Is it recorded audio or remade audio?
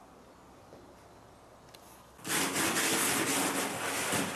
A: recorded